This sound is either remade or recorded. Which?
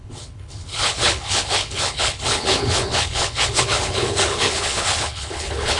remade